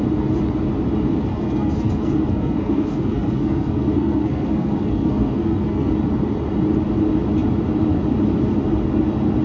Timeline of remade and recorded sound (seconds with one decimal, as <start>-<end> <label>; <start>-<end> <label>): 0.0-1.3 recorded; 1.3-5.9 remade; 5.9-9.4 recorded